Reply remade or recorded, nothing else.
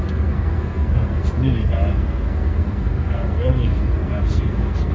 remade